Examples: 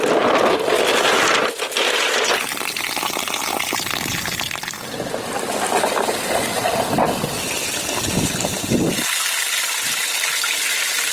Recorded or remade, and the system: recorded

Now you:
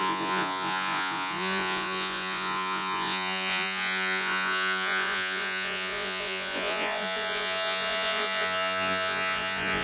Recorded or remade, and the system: remade, vocoder, Vocos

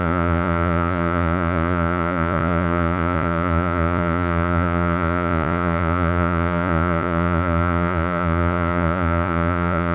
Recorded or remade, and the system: remade, vocoder, Vocos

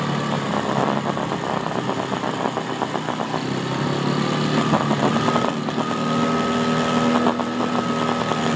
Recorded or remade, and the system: recorded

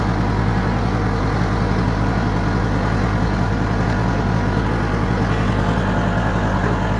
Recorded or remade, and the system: recorded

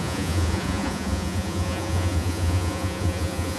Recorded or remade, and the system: remade, vocoder, Vocos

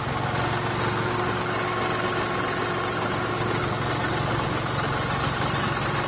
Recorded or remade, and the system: recorded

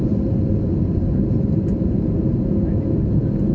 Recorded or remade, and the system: recorded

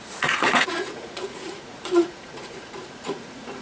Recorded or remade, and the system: remade, vocoder, Vocos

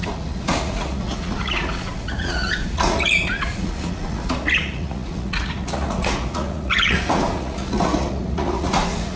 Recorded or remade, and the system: remade, vocoder, Vocos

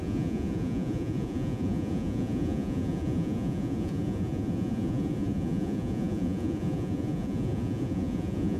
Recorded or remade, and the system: remade, vocoder, Vocos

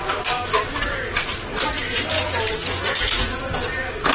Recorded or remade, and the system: recorded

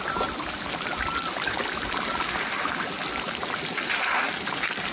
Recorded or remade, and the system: recorded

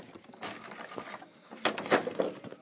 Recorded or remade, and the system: recorded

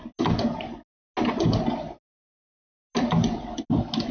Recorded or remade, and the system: recorded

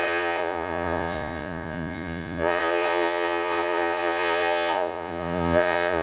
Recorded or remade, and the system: remade, vocoder, Vocos